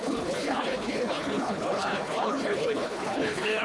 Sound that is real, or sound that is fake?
fake